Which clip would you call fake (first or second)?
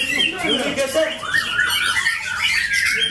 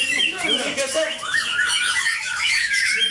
second